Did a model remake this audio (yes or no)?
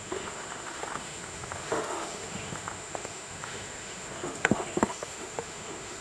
yes